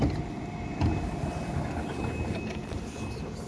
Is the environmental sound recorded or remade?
recorded